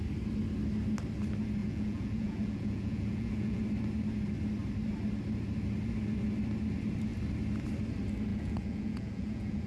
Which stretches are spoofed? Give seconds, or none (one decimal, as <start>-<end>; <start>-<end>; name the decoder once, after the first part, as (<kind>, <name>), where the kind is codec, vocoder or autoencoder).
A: 1.6-3.6 (vocoder, Vocos); 8.3-9.7